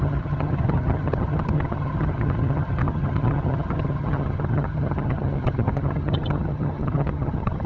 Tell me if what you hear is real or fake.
fake